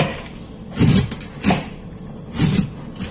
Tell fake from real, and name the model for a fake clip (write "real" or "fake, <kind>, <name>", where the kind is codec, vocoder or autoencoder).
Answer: real